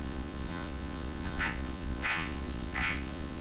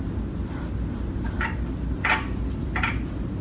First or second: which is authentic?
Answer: second